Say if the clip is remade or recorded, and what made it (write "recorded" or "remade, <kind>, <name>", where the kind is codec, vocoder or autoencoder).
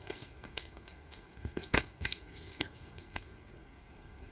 remade, codec, SNAC